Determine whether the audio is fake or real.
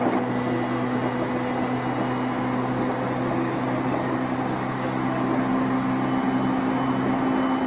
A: real